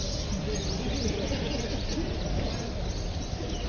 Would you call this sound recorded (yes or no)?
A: yes